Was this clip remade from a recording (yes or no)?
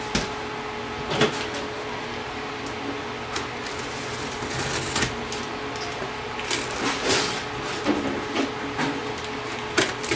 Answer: no